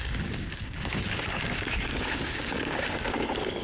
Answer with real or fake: fake